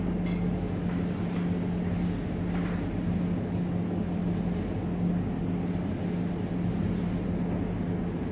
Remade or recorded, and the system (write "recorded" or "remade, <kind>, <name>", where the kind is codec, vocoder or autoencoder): recorded